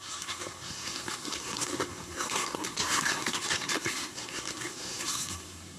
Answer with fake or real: fake